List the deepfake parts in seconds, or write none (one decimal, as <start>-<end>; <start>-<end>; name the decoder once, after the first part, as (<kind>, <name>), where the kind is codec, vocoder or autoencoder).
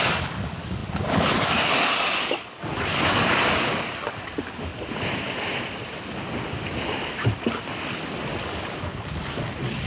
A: 0.0-4.7 (codec, DAC); 8.8-9.9